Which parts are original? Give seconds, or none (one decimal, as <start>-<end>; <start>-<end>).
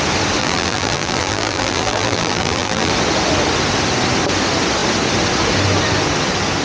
0.0-0.4; 2.9-6.6